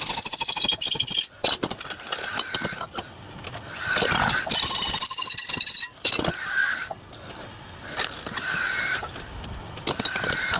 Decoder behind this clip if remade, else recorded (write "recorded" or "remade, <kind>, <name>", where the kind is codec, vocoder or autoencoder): recorded